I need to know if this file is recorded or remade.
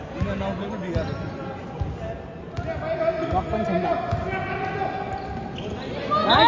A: recorded